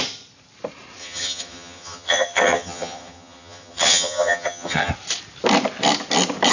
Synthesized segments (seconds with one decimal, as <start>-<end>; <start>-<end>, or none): 1.0-4.9